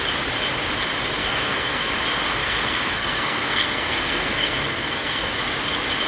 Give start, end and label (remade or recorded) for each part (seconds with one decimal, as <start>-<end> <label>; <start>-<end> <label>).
0.0-1.2 recorded; 1.2-1.9 remade; 1.9-2.4 recorded; 2.4-5.3 remade; 5.3-6.1 recorded